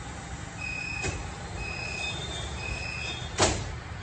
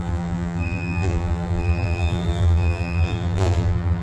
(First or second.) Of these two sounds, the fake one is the second